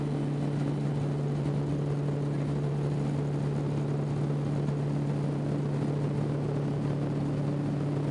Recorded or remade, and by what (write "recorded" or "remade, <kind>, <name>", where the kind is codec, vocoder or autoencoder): recorded